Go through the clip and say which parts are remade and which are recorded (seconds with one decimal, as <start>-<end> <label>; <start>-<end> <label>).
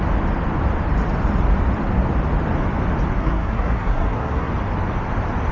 0.0-3.2 recorded; 3.2-4.5 remade; 4.5-5.5 recorded